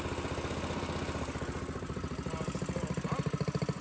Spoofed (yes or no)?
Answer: no